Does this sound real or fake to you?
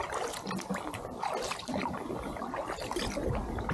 real